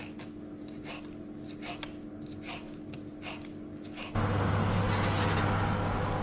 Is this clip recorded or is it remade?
recorded